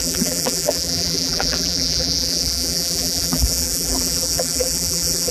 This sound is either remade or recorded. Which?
remade